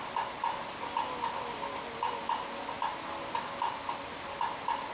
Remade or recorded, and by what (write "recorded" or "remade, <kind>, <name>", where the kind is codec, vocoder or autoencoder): recorded